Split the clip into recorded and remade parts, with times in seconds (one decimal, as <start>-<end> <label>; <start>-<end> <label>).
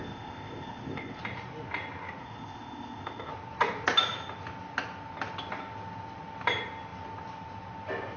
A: 0.0-1.2 remade; 1.2-2.2 recorded; 2.2-3.3 remade; 3.3-8.2 recorded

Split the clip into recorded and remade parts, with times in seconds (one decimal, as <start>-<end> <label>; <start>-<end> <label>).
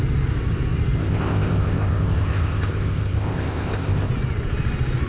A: 0.0-1.0 recorded; 1.0-4.1 remade; 4.1-5.1 recorded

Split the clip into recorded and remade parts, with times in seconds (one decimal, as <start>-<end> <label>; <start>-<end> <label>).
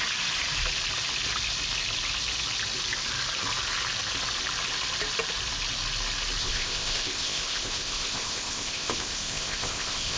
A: 0.0-6.4 recorded; 6.4-10.2 remade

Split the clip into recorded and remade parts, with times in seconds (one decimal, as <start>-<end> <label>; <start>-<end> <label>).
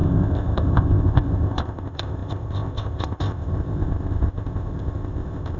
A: 0.0-5.6 remade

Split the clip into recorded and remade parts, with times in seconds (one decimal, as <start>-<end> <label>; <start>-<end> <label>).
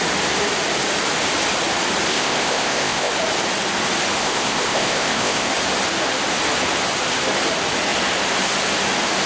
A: 0.0-2.1 recorded; 2.1-3.1 remade; 3.1-4.2 recorded; 4.2-5.5 remade; 5.5-9.3 recorded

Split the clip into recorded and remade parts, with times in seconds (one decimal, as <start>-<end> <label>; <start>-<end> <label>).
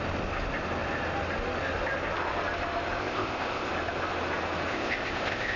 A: 0.0-3.0 recorded; 3.0-3.7 remade; 3.7-4.7 recorded; 4.7-5.6 remade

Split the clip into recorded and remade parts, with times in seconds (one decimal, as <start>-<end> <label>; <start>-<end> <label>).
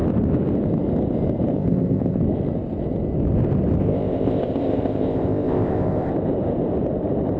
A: 0.0-1.5 recorded; 1.5-2.2 remade; 2.2-3.8 recorded; 3.8-6.1 remade; 6.1-7.4 recorded